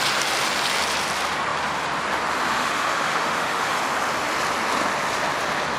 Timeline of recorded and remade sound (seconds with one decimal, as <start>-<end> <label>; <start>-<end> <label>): 0.0-2.6 recorded; 2.6-3.8 remade; 3.8-5.8 recorded